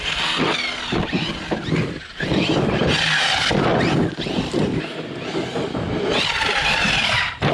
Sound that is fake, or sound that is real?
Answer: real